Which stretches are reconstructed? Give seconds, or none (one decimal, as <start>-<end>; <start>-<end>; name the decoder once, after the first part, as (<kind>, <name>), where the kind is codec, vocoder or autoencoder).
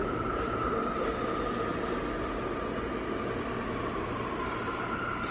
none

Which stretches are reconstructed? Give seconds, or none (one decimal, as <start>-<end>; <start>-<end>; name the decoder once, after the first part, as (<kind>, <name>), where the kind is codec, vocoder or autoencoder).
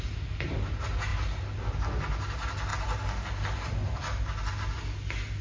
none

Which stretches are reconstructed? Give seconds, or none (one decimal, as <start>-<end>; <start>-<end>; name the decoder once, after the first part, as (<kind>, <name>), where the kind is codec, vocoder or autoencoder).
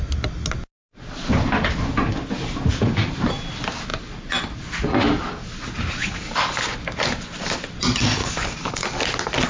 6.0-6.6 (codec, DAC); 8.2-9.0